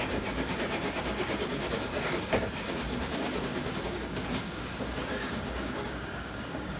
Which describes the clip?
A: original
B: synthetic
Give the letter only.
B